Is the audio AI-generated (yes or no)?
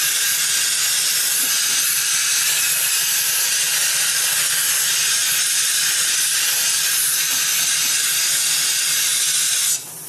no